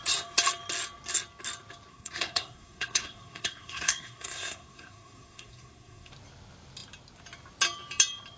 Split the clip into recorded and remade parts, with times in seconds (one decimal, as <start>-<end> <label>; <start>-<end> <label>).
0.0-1.9 recorded; 1.9-6.1 remade; 6.1-8.4 recorded